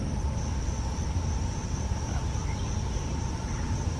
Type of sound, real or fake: real